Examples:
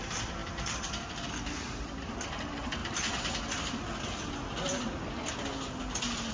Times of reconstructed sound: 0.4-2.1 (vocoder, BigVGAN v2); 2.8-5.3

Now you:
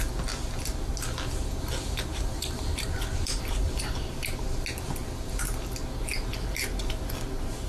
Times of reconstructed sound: 2.1-3.8 (vocoder, BigVGAN v2); 5.0-5.6